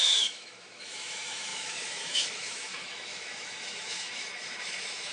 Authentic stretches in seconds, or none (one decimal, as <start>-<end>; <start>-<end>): none